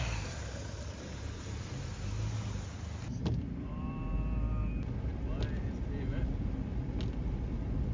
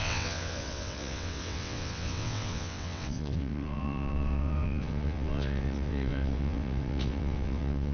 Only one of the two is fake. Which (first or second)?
second